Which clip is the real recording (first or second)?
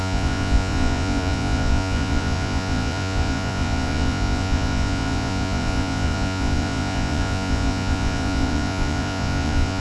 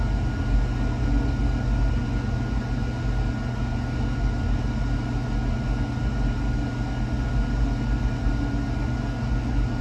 second